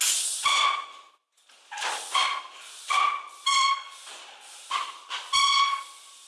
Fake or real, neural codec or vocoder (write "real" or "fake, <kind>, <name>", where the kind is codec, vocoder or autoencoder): real